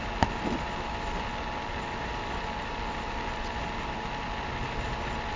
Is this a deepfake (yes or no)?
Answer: no